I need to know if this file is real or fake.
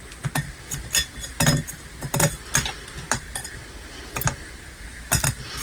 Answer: real